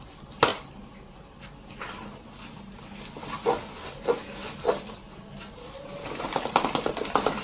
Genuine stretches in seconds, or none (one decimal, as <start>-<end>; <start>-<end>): 0.0-7.4